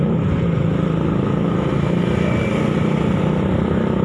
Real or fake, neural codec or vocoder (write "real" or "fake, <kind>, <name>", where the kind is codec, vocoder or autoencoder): real